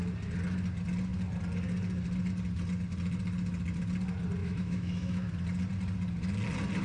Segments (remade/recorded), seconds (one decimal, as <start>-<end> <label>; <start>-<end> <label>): 0.0-4.4 recorded; 4.4-5.3 remade; 5.3-6.8 recorded